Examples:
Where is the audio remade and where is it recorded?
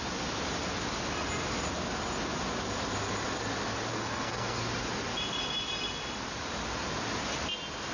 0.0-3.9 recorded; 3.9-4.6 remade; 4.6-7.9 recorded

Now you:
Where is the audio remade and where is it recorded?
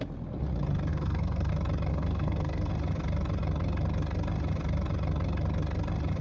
0.0-0.9 recorded; 0.9-1.5 remade; 1.5-1.9 recorded; 1.9-2.7 remade; 2.7-6.2 recorded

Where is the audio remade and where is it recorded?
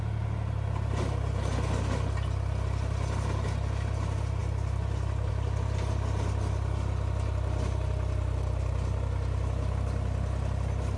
0.0-11.0 recorded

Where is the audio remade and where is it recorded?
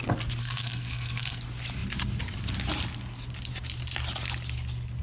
0.0-0.4 recorded; 0.4-1.4 remade; 1.4-5.0 recorded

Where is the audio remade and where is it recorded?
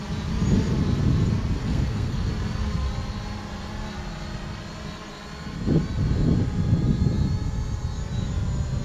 0.0-1.6 recorded; 1.6-2.3 remade; 2.3-8.8 recorded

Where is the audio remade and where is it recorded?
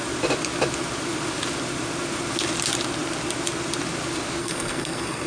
0.0-4.4 recorded; 4.4-5.3 remade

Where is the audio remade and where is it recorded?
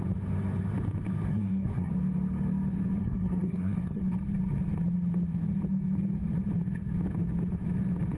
0.0-1.3 recorded; 1.3-1.9 remade; 1.9-3.0 recorded; 3.0-4.0 remade; 4.0-8.2 recorded